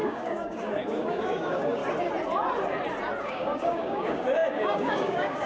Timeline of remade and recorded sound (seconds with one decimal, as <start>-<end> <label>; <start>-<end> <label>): 0.0-1.8 remade; 1.8-3.2 recorded; 3.2-5.5 remade

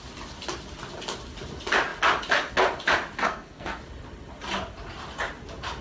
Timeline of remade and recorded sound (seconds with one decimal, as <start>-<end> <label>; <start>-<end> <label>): 0.0-3.2 recorded; 3.2-3.8 remade; 3.8-5.8 recorded

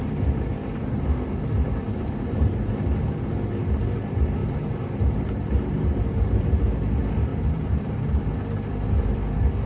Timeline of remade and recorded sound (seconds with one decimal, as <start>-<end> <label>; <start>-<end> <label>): 0.0-1.8 recorded; 1.8-2.7 remade; 2.7-4.4 recorded; 4.4-6.6 remade; 6.6-7.3 recorded; 7.3-7.9 remade; 7.9-9.7 recorded

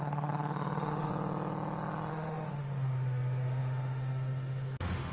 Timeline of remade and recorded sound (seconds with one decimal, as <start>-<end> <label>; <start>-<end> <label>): 0.0-1.1 remade; 1.1-2.1 recorded; 2.1-5.1 remade